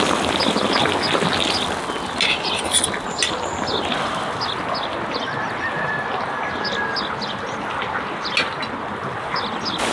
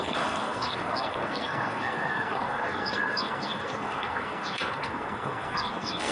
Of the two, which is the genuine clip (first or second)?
first